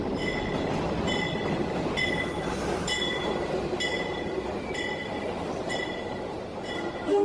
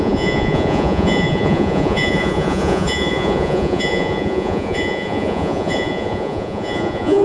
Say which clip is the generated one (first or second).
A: second